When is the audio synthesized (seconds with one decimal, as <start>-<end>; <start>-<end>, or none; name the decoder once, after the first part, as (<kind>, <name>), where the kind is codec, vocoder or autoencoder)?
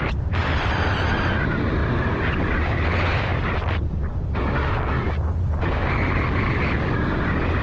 0.4-1.1 (vocoder, BigVGAN v2); 1.8-2.6; 3.3-4.5